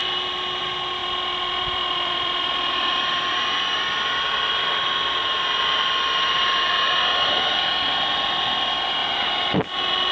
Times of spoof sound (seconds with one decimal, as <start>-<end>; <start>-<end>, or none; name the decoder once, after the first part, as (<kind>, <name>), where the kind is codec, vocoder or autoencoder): 0.0-0.6 (vocoder, BigVGAN v2); 1.0-5.8; 9.0-10.1